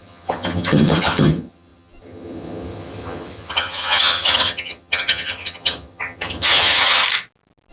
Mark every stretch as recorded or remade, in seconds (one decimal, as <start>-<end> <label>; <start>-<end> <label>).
0.0-7.0 remade; 7.0-7.7 recorded